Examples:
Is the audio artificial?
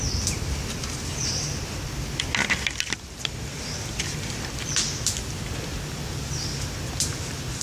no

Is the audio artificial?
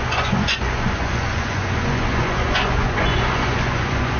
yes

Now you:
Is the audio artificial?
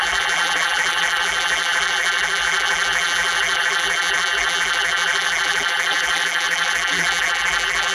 yes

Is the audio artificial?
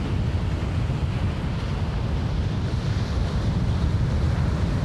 no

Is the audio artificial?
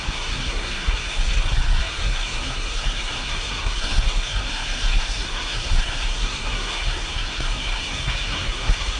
yes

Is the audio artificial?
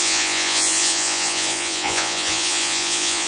yes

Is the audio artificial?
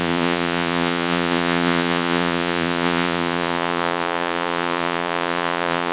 yes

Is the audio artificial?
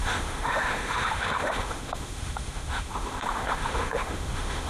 yes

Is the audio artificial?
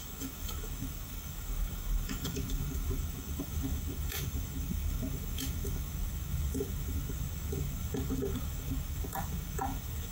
yes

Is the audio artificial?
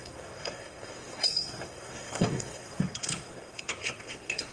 yes